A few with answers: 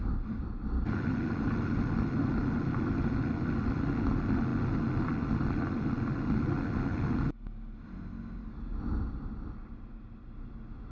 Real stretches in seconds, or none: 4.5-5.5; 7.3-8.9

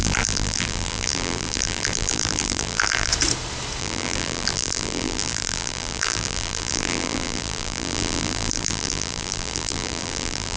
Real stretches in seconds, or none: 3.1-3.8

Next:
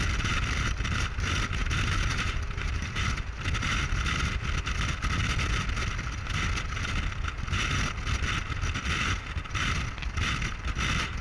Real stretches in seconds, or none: 0.0-1.6; 3.1-11.2

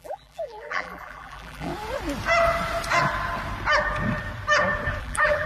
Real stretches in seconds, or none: 1.7-5.0

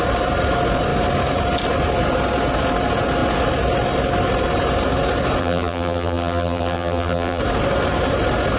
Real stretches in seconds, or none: 0.0-5.4; 7.4-8.6

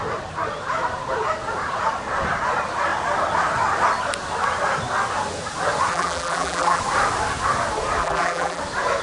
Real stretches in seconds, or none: 0.0-5.9; 6.8-8.0; 8.6-9.0

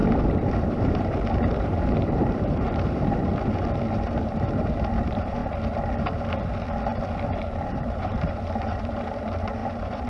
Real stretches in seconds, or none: 0.0-0.5; 3.3-3.9; 5.4-7.4

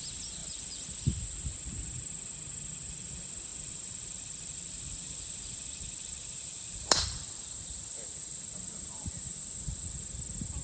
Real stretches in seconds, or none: 0.0-0.4; 1.0-3.5; 8.4-10.6